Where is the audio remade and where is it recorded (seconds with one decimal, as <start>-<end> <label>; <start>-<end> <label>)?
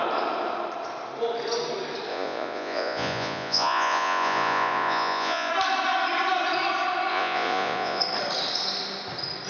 0.0-2.1 recorded; 2.1-5.5 remade; 5.5-7.1 recorded; 7.1-8.0 remade; 8.0-9.5 recorded